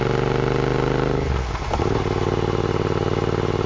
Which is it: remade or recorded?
recorded